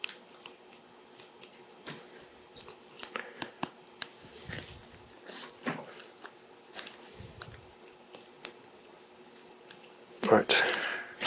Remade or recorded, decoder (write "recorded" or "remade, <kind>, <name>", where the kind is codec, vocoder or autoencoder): recorded